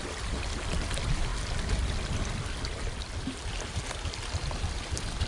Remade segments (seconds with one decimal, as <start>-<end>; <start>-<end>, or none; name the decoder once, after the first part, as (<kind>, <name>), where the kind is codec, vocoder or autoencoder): none